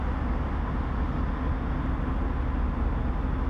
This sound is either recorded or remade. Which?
recorded